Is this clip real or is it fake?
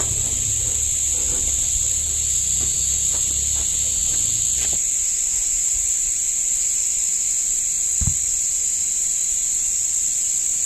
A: real